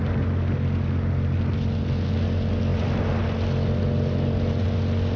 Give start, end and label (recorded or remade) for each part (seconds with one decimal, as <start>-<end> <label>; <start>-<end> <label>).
0.0-5.2 recorded